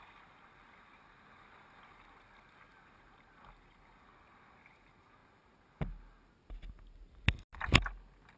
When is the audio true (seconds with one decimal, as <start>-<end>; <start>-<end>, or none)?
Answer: 0.0-8.4